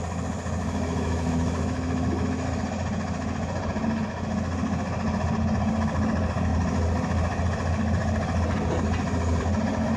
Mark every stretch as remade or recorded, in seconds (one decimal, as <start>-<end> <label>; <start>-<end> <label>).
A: 0.0-0.6 recorded; 0.6-2.6 remade; 2.6-10.0 recorded